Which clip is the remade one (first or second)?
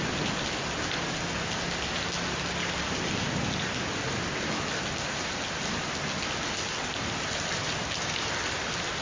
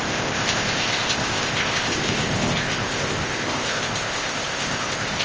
second